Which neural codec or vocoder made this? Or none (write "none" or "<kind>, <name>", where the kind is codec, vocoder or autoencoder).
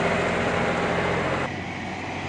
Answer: none